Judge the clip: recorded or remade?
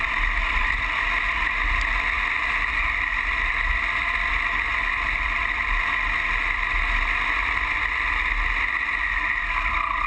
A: recorded